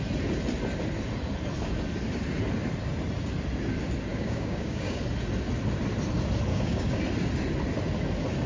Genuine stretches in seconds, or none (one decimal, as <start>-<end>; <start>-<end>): 0.0-4.1; 5.0-6.5; 7.0-8.5